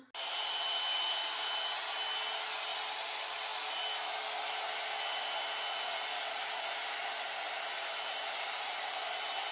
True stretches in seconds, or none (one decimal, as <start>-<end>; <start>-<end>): 0.0-9.5